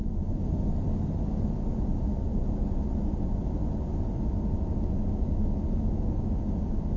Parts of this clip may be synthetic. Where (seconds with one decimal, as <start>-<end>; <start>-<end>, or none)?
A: none